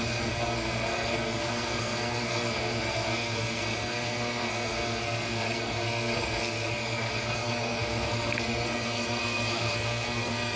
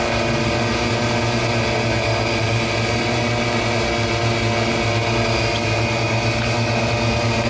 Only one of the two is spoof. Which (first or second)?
first